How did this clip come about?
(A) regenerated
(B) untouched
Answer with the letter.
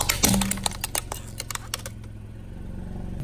B